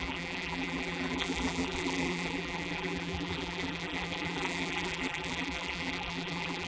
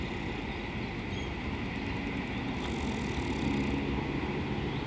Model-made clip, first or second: first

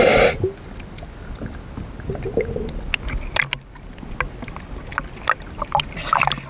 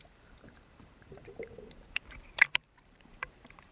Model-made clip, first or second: second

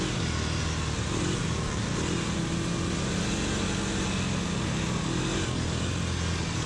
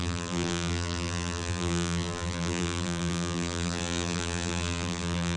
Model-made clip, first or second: second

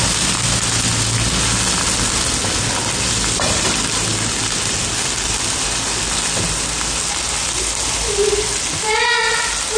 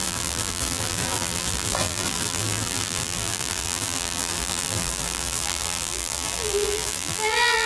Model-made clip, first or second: second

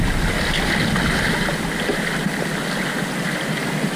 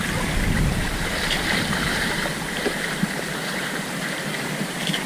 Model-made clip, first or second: second